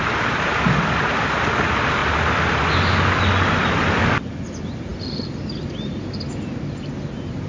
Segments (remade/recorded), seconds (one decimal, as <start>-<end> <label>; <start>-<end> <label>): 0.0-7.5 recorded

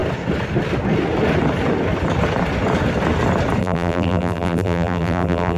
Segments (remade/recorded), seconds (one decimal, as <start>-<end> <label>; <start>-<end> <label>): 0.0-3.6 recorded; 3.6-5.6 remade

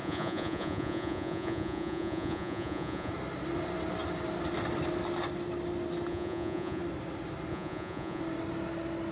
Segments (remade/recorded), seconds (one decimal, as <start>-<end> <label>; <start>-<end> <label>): 0.0-3.1 remade; 3.1-6.1 recorded; 6.1-6.8 remade; 6.8-7.5 recorded; 7.5-8.2 remade; 8.2-9.1 recorded

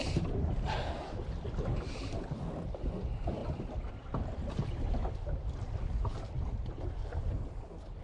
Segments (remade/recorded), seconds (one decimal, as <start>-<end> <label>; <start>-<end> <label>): 0.0-8.0 recorded